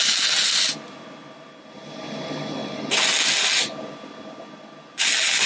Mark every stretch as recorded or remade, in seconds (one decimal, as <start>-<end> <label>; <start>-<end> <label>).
0.0-5.5 recorded